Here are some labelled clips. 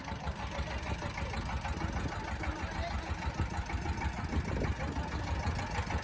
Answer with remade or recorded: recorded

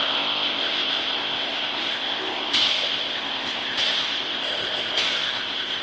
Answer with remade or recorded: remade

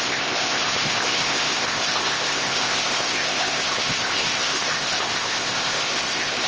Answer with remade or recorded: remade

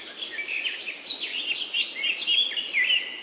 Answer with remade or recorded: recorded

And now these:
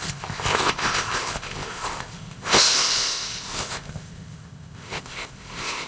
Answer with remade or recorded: remade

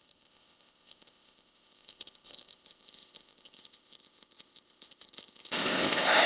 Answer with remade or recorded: remade